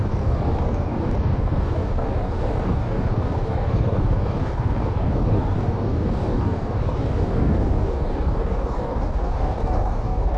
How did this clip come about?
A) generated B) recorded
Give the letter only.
A